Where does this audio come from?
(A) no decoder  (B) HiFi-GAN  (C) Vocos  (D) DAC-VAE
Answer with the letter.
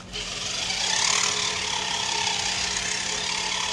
A